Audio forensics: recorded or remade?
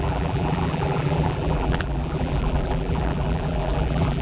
remade